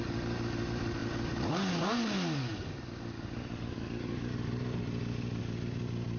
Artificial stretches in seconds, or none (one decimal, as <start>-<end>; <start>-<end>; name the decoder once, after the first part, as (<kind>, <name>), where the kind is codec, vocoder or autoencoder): none